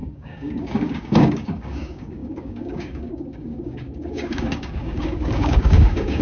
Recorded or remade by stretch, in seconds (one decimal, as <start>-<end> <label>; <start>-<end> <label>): 0.0-6.2 remade